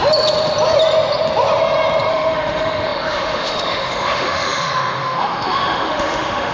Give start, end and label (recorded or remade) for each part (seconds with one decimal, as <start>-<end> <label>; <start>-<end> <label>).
0.0-2.1 recorded; 2.1-6.5 remade